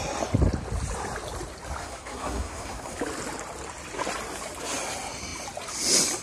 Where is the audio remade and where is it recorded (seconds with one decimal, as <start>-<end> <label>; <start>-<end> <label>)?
0.0-1.8 recorded; 1.8-3.0 remade; 3.0-6.2 recorded